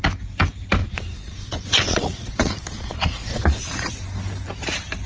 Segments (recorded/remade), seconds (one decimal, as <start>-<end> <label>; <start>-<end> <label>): 0.0-0.8 recorded; 0.8-3.9 remade; 3.9-5.1 recorded

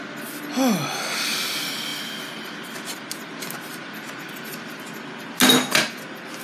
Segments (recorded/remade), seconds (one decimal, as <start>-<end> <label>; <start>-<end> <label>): 0.0-6.4 recorded

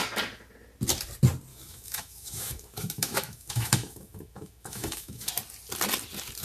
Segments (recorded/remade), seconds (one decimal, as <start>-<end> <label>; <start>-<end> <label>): 0.0-1.5 recorded; 1.5-5.3 remade; 5.3-6.4 recorded